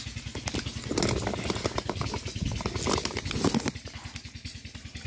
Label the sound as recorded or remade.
recorded